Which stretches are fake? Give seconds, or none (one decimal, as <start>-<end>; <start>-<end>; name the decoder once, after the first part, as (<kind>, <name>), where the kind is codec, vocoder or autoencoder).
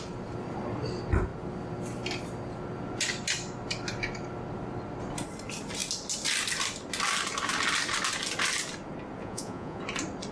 9.2-9.8 (vocoder, Vocos)